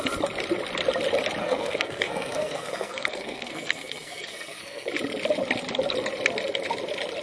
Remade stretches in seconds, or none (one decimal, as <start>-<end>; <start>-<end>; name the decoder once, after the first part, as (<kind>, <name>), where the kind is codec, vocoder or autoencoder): 1.4-4.9 (codec, SNAC)

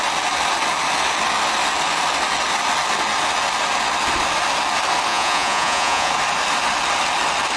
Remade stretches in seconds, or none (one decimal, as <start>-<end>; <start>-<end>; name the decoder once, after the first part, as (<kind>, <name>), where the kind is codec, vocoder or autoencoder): 5.1-6.1 (vocoder, Vocos)